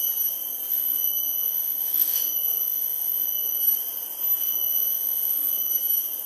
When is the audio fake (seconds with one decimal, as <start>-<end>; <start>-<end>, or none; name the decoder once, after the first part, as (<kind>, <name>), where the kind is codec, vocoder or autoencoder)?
0.7-3.6 (autoencoder, DAC-VAE); 4.4-5.7